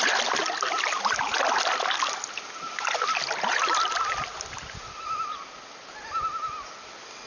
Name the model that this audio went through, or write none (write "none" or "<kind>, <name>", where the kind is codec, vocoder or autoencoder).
none